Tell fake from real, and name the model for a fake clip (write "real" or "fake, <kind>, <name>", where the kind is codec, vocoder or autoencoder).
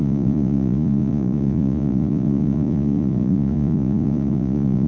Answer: fake, vocoder, Vocos